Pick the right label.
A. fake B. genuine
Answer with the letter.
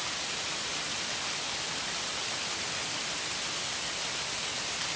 B